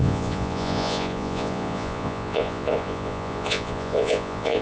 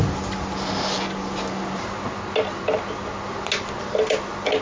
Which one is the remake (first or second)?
first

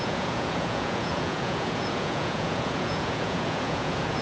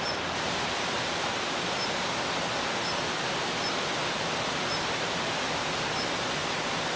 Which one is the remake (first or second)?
first